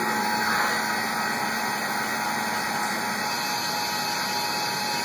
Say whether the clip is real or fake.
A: real